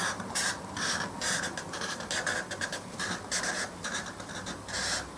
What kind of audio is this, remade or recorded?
recorded